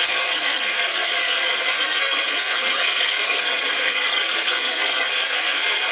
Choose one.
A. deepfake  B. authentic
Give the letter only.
A